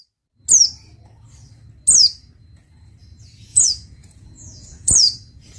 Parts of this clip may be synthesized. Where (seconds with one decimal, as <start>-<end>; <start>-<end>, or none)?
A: 3.5-5.6